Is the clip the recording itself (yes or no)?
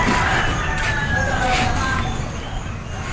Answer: yes